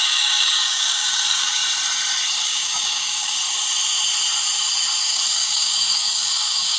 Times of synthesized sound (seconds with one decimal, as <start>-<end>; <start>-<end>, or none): 0.0-1.6; 2.4-3.4; 5.0-6.8